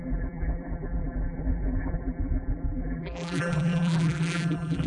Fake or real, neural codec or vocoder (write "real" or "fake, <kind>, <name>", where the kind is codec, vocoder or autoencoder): fake, vocoder, BigVGAN v2